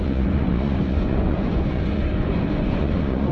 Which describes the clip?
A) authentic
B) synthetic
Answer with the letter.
B